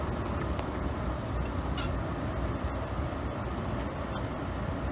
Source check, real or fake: fake